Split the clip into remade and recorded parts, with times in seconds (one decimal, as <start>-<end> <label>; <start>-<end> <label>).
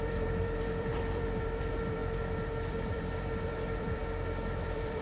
0.0-4.0 remade; 4.0-4.6 recorded; 4.6-5.0 remade